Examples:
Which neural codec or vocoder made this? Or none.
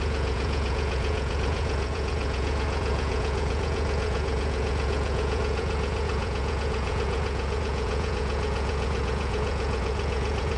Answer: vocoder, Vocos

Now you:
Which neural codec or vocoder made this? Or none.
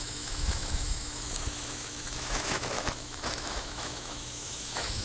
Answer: autoencoder, DAC-VAE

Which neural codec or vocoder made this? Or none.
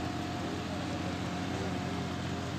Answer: none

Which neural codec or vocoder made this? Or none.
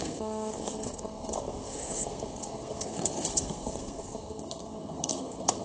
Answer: codec, SNAC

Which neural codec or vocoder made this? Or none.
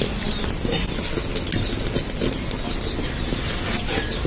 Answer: none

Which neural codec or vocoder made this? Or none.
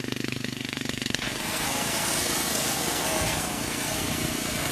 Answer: codec, SNAC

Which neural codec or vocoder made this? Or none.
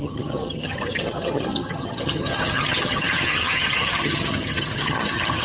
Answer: vocoder, HiFi-GAN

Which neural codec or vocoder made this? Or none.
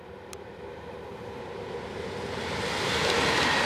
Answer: none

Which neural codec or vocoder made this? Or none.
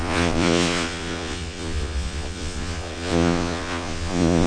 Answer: vocoder, Vocos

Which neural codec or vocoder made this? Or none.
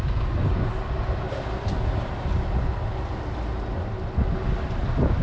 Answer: none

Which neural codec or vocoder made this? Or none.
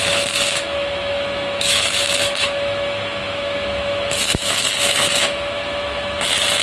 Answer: autoencoder, DAC-VAE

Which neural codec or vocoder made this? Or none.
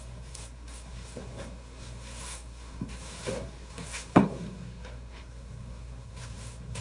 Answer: codec, SNAC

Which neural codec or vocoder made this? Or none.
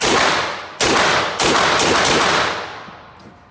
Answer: none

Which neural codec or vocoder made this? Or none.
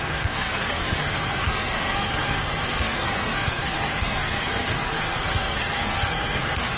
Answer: codec, SNAC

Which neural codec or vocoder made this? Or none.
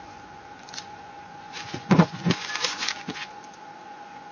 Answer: vocoder, Vocos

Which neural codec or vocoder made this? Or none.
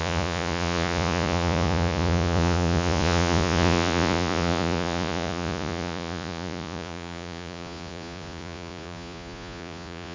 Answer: vocoder, Vocos